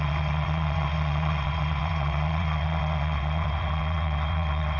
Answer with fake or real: fake